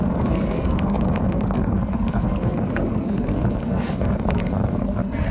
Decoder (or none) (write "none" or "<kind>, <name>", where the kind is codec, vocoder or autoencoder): codec, SNAC